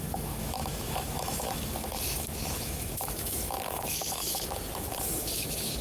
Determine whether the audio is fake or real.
fake